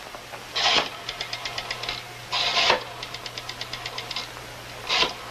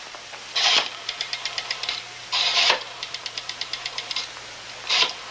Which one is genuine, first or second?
first